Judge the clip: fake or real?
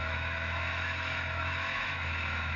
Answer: fake